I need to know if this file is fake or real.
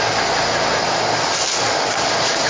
real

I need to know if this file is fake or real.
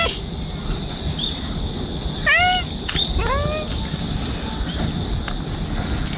real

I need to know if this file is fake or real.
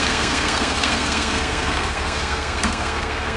fake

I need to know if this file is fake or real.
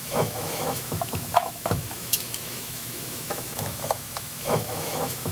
fake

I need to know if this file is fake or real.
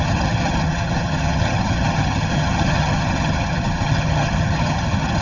fake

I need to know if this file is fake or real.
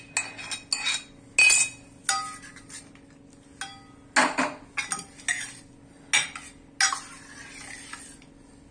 real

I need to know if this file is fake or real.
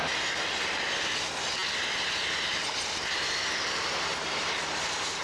real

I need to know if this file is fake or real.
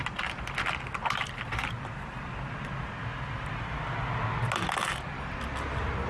real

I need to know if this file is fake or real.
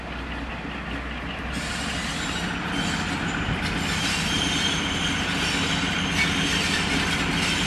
real